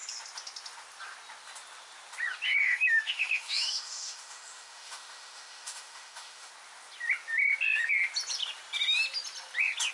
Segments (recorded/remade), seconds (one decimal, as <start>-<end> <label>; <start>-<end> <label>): 0.0-2.6 recorded; 2.6-6.5 remade; 6.5-9.9 recorded